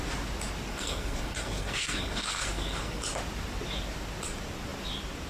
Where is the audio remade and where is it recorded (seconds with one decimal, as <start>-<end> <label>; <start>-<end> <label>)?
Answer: 0.0-0.7 recorded; 0.7-3.0 remade; 3.0-5.3 recorded